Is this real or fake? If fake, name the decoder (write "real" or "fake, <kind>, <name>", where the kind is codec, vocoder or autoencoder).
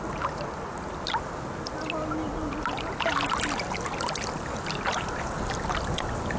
real